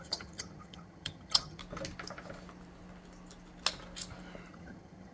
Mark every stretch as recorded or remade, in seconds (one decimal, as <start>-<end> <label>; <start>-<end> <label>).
0.0-1.6 remade; 1.6-4.5 recorded; 4.5-5.1 remade